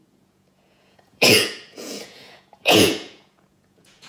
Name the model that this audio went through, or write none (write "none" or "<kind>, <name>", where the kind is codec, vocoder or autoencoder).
vocoder, Vocos